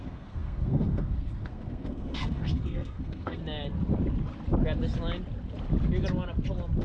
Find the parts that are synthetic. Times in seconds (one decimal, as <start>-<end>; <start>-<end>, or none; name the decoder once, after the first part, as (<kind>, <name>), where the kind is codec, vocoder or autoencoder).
0.0-3.4 (codec, SNAC)